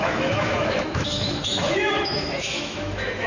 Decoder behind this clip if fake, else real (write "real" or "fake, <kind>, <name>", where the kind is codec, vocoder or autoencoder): fake, autoencoder, DAC-VAE